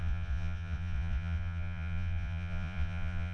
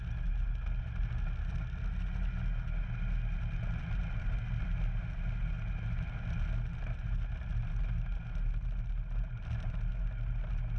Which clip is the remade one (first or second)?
first